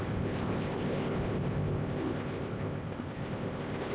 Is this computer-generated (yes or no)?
yes